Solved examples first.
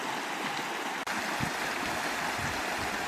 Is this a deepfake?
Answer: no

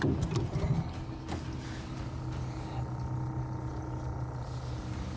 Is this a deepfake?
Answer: no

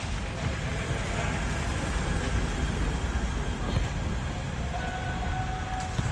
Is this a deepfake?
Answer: no